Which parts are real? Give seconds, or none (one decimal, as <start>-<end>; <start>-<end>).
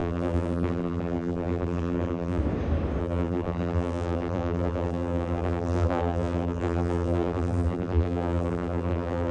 2.4-3.0